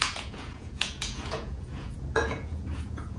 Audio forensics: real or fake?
fake